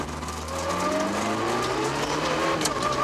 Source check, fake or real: real